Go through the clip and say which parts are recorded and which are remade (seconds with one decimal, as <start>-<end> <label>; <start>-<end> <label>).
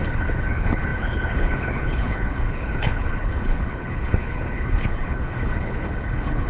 0.0-6.5 remade